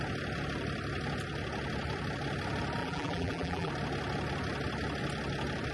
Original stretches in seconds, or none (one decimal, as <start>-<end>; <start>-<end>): 0.0-2.8; 3.7-5.7